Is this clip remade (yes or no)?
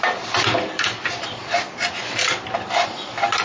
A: no